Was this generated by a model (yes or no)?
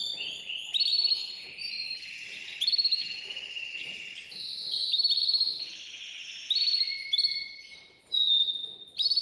no